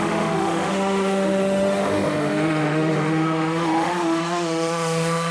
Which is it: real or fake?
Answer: fake